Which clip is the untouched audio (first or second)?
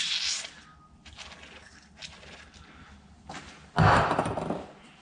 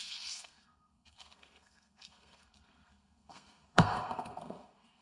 first